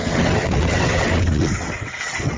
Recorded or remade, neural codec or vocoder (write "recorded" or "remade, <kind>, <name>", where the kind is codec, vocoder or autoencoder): remade, vocoder, WaveNeXt